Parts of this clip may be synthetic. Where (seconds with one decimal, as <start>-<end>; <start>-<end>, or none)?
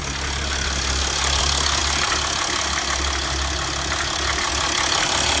none